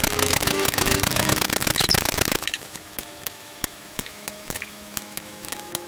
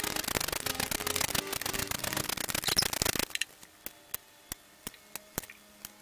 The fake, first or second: first